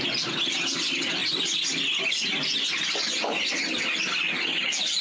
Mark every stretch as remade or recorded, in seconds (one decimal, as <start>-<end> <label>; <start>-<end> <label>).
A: 0.0-5.0 recorded